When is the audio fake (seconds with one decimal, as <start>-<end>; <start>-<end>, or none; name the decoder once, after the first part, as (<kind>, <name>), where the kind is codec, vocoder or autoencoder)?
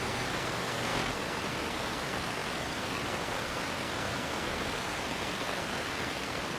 0.0-6.6 (codec, SNAC)